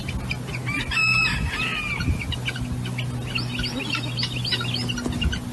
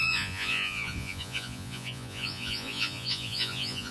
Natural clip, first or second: first